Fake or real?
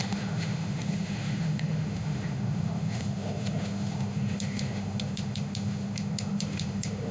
fake